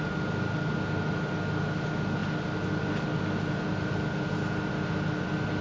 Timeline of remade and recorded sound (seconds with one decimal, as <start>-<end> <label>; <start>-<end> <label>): 0.0-5.6 recorded